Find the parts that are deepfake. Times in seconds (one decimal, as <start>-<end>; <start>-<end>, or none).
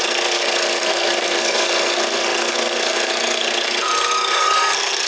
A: 0.0-5.1